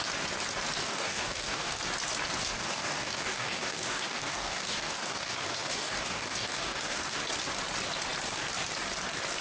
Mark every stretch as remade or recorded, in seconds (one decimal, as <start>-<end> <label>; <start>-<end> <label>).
0.0-0.8 recorded; 0.8-1.8 remade; 1.8-2.4 recorded; 2.4-7.2 remade; 7.2-9.4 recorded